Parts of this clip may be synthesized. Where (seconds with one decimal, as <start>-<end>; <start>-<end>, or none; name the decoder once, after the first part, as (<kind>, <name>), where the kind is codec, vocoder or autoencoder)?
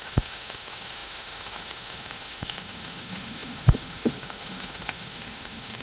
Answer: 0.0-5.8 (autoencoder, DAC-VAE)